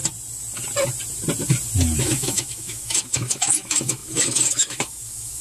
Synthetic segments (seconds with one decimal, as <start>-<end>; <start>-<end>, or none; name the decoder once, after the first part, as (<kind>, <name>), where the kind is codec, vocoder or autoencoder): 2.0-5.4 (autoencoder, DAC-VAE)